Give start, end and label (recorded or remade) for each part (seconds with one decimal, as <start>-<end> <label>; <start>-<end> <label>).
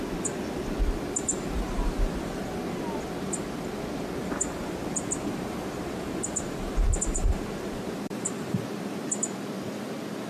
0.0-1.3 recorded; 1.3-2.4 remade; 2.4-4.2 recorded; 4.2-8.6 remade; 8.6-10.3 recorded